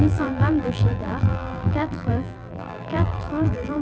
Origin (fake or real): fake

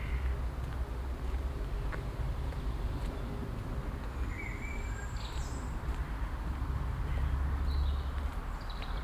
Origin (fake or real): real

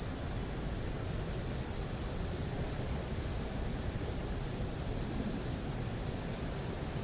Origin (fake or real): fake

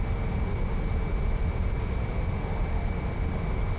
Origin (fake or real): fake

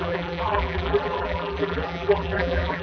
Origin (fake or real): fake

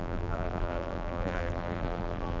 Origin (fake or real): fake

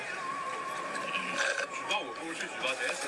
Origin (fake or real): real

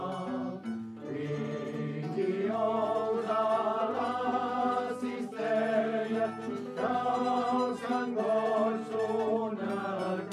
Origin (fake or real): real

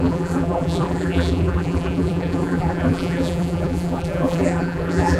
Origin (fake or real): fake